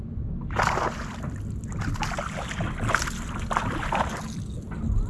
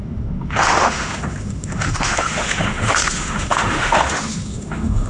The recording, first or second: first